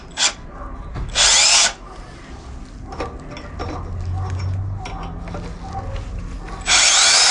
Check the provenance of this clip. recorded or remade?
recorded